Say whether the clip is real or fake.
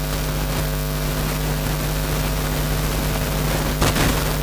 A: real